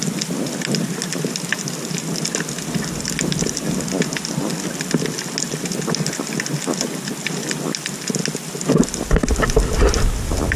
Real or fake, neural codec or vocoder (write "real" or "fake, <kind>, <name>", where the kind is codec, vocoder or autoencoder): real